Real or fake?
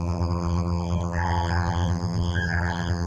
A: fake